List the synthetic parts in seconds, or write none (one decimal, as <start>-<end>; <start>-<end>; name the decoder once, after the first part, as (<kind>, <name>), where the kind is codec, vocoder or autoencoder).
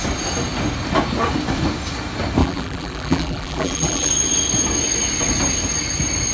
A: 2.4-4.1 (vocoder, BigVGAN v2)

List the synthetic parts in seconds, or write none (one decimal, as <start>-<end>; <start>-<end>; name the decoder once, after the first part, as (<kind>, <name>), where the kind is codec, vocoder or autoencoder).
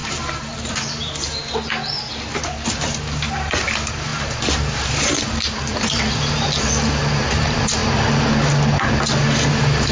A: 0.0-1.4 (vocoder, BigVGAN v2); 2.3-7.8; 9.5-9.9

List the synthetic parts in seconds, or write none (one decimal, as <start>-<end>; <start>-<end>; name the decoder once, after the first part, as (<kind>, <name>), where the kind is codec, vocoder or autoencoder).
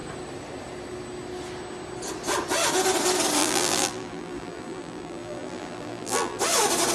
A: 3.4-6.4 (vocoder, BigVGAN v2)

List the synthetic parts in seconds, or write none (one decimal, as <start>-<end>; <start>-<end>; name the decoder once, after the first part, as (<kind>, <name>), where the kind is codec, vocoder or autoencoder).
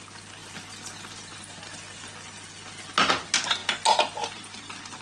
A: none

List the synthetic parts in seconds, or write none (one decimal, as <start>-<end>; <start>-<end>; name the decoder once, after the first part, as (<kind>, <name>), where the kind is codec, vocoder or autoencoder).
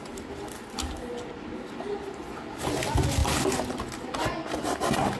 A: 2.2-2.8 (vocoder, BigVGAN v2)